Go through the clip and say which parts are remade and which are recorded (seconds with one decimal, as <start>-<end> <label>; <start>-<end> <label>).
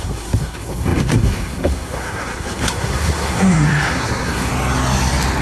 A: 0.0-4.5 remade; 4.5-5.4 recorded